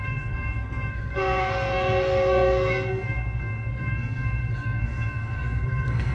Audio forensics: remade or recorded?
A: remade